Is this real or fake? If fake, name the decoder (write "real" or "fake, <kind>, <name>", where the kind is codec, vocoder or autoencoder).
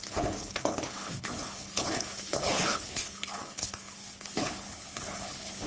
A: fake, codec, HILCodec